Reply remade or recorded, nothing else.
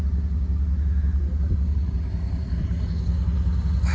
recorded